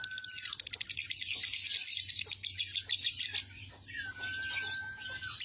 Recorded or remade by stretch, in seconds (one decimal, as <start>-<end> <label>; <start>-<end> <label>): 0.0-5.4 recorded